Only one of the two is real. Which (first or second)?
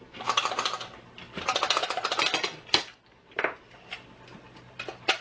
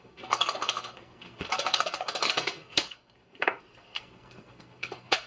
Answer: first